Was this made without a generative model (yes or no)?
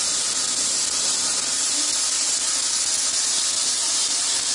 yes